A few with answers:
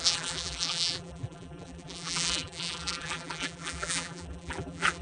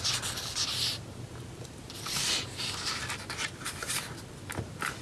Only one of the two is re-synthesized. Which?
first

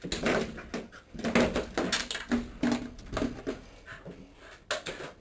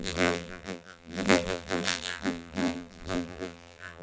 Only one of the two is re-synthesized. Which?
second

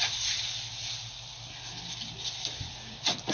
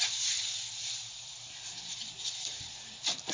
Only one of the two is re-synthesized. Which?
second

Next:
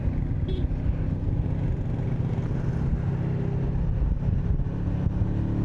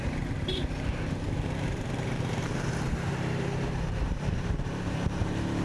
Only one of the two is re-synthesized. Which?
second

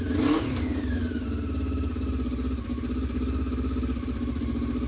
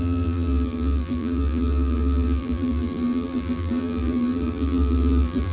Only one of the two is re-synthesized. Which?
second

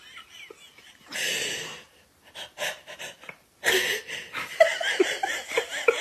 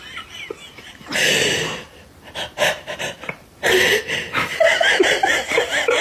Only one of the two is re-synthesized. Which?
second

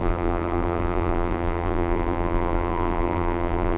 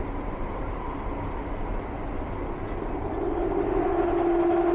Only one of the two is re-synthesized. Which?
first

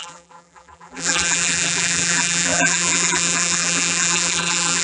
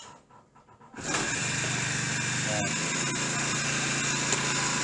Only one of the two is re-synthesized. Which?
first